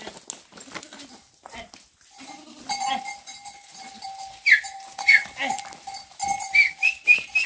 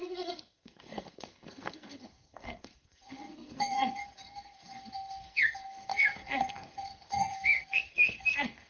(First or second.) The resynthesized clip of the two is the second